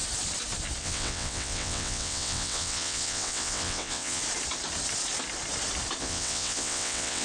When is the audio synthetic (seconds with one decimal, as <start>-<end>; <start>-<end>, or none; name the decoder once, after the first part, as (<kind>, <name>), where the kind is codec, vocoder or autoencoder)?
0.8-4.2 (vocoder, WaveNeXt); 6.0-7.2